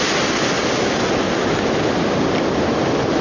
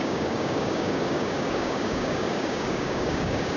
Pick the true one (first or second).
first